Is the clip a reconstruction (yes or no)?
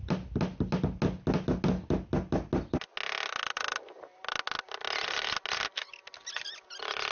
no